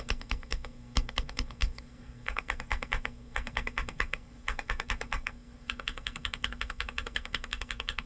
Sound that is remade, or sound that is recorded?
remade